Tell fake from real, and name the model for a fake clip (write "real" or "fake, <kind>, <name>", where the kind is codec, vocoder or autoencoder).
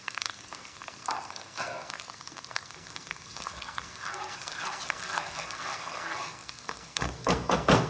fake, codec, SNAC